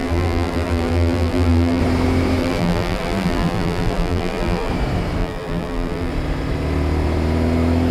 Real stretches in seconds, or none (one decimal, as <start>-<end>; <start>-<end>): 1.8-2.4; 4.7-5.2; 6.1-7.9